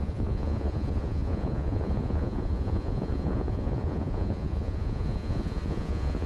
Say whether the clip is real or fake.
fake